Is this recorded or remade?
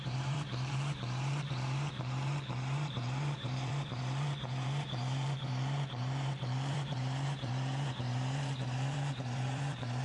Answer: remade